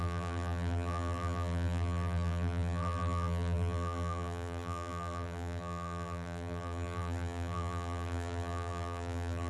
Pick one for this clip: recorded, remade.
remade